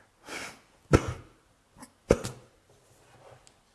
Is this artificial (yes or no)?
no